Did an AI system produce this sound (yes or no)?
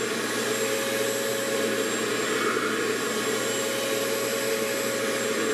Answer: no